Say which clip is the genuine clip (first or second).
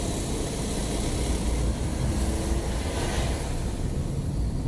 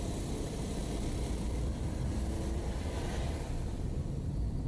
first